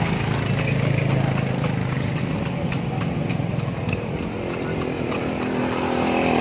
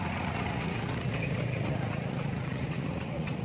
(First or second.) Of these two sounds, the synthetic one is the second